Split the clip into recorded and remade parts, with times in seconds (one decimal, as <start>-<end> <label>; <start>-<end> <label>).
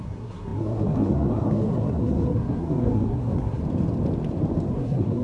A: 0.0-3.6 remade; 3.6-4.7 recorded; 4.7-5.2 remade